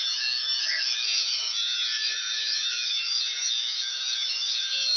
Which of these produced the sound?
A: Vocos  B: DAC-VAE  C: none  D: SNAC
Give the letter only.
B